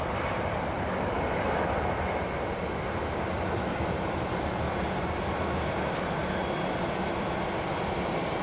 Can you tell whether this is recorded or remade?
recorded